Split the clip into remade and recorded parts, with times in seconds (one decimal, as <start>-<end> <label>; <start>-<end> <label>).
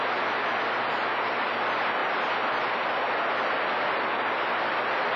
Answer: 0.0-5.2 recorded